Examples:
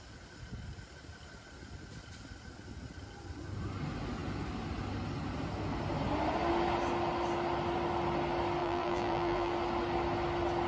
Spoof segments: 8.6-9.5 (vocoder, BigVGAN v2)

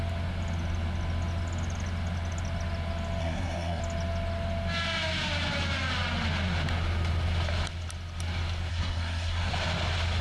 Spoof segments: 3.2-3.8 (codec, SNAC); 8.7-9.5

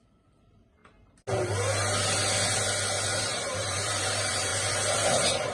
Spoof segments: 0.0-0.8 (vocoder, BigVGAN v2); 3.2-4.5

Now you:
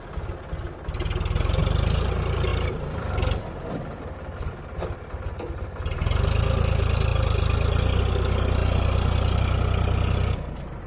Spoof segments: 2.5-4.5 (vocoder, BigVGAN v2)

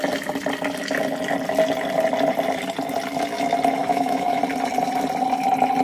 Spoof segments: 3.8-4.4 (autoencoder, DAC-VAE)